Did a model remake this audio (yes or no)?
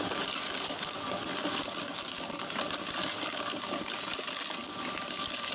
yes